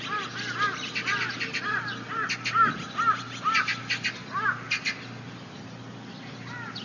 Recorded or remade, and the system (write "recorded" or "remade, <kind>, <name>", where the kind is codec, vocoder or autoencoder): recorded